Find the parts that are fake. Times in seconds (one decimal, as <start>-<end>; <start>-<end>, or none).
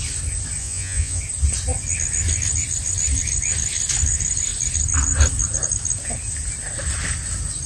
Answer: 0.6-1.2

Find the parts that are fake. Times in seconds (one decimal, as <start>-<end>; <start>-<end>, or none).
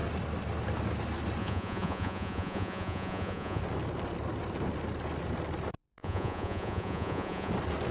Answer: 1.4-3.6; 6.0-7.5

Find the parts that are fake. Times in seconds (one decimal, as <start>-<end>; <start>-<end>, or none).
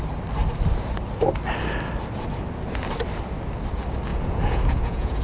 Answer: 4.1-5.2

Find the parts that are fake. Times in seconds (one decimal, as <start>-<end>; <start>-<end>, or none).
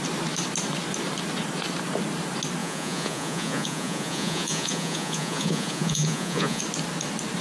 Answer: 2.6-6.6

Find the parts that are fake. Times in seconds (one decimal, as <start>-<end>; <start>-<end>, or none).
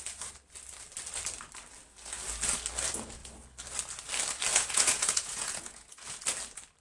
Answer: 4.5-6.2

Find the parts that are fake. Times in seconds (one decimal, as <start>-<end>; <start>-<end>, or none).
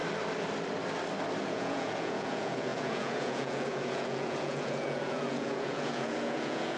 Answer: 1.4-6.8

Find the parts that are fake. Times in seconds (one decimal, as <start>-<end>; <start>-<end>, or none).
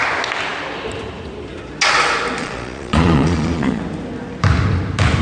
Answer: 2.4-3.8